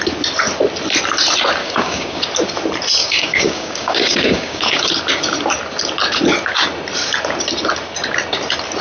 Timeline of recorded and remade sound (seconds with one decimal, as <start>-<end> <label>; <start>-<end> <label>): 0.0-1.6 recorded; 1.6-2.2 remade; 2.2-3.0 recorded; 3.0-4.9 remade; 4.9-8.8 recorded